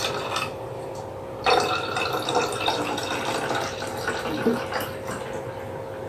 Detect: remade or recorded recorded